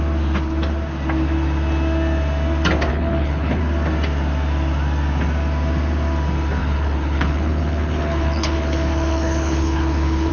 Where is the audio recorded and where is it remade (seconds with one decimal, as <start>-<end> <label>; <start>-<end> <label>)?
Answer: 0.0-2.9 recorded; 2.9-3.6 remade; 3.6-6.6 recorded; 6.6-10.3 remade